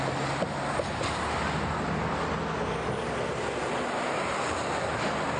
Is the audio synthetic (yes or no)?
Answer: no